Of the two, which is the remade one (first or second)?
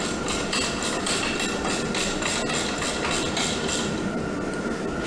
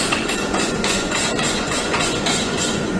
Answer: second